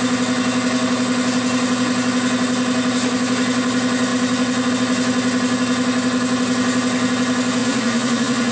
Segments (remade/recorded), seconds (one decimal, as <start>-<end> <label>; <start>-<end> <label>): 0.0-7.6 recorded; 7.6-8.5 remade